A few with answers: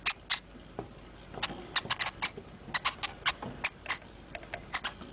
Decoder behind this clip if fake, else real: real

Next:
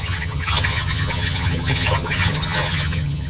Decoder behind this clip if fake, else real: fake, vocoder, HiFi-GAN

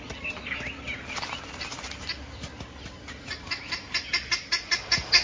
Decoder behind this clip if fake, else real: real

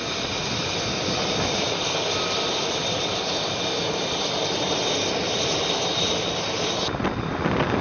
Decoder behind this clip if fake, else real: real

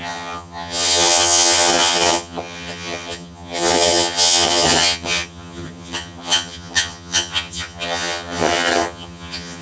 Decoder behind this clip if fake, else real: fake, vocoder, HiFi-GAN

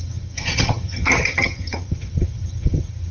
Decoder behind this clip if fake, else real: fake, vocoder, HiFi-GAN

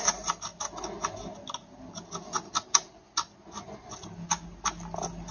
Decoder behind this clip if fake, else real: real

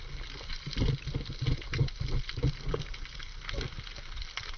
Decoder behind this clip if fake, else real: real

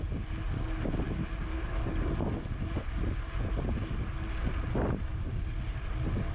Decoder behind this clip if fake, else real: real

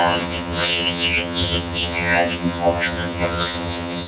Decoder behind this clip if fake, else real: fake, vocoder, HiFi-GAN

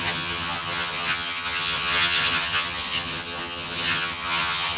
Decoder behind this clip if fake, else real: fake, vocoder, HiFi-GAN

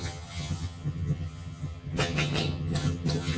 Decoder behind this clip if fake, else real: fake, vocoder, HiFi-GAN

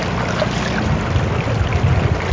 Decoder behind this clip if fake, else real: real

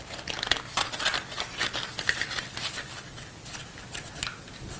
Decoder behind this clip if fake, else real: real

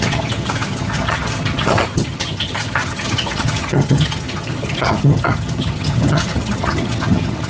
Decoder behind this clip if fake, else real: fake, vocoder, HiFi-GAN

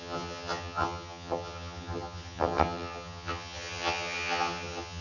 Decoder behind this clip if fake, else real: fake, vocoder, HiFi-GAN